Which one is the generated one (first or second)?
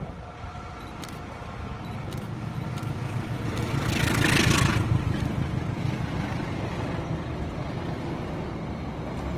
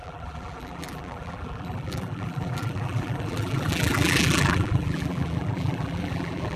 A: second